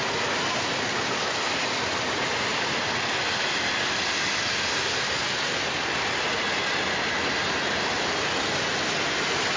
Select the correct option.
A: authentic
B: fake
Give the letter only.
A